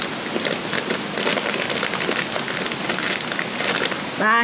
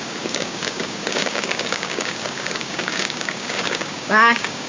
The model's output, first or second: second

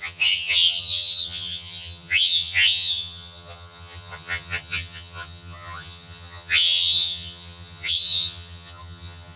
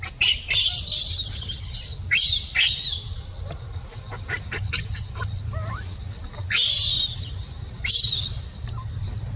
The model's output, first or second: first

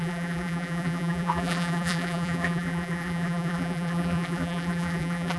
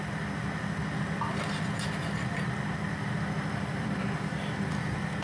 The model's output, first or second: first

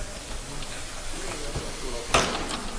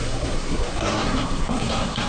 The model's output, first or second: second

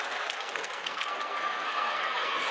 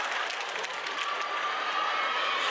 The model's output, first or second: first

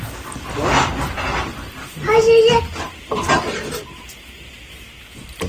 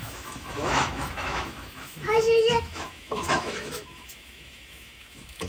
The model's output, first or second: second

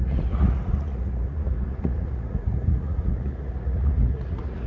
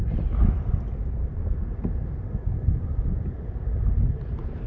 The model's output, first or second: first